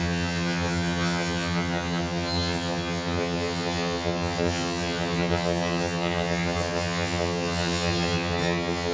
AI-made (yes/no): yes